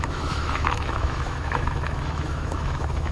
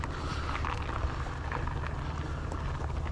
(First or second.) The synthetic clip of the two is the first